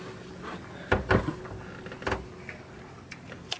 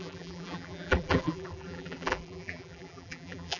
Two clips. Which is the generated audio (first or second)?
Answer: second